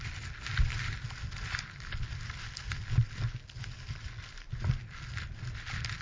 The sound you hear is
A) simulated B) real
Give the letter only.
B